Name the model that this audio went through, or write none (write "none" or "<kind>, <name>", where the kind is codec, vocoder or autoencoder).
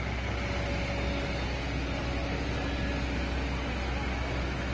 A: none